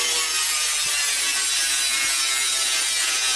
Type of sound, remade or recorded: recorded